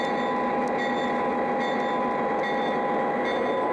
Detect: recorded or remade recorded